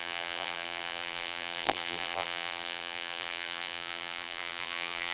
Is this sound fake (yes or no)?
yes